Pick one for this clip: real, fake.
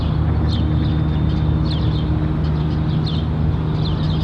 real